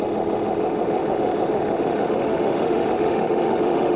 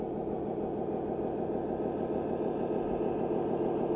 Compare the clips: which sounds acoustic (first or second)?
second